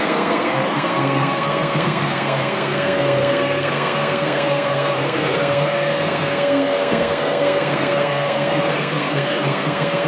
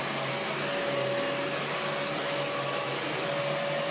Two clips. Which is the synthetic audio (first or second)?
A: first